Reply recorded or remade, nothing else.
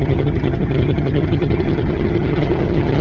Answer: remade